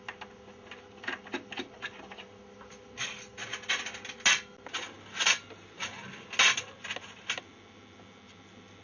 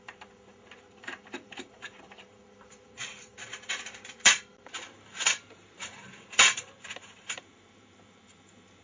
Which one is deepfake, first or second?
second